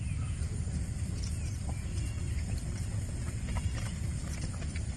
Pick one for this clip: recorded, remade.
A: recorded